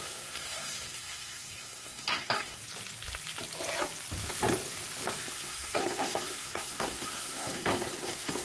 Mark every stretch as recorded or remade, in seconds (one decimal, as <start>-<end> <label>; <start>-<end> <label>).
0.0-2.6 remade; 2.6-5.3 recorded; 5.3-8.4 remade